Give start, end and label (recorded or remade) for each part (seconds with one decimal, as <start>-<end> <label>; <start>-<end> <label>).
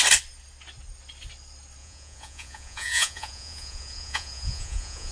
0.0-1.8 recorded; 1.8-5.1 remade